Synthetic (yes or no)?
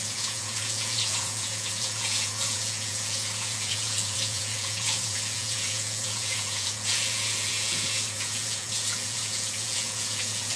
yes